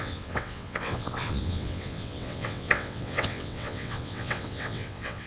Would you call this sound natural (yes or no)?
no